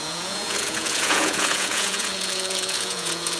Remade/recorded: remade